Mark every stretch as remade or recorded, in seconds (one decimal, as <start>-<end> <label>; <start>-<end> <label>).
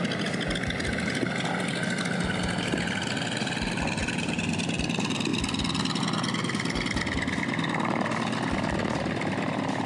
0.0-4.0 recorded; 4.0-4.5 remade; 4.5-9.9 recorded